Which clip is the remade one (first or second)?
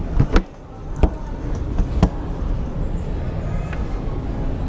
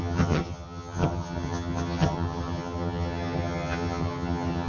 second